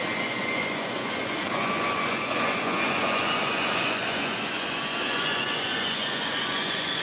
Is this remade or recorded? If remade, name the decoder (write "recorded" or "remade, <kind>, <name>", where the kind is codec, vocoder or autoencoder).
remade, vocoder, Vocos